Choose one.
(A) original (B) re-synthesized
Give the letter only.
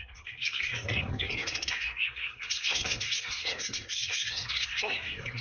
B